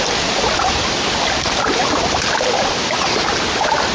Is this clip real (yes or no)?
yes